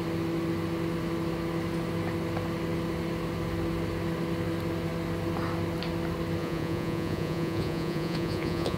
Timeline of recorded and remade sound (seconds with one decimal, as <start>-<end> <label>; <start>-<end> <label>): 0.0-6.4 recorded; 6.4-8.8 remade